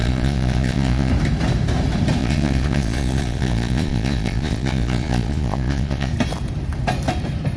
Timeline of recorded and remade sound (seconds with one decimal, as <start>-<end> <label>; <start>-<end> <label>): 0.0-1.1 remade; 1.1-2.2 recorded; 2.2-6.1 remade; 6.1-7.6 recorded